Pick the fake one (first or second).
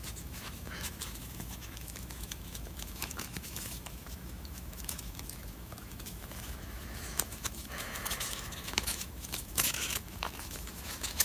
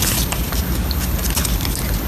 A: first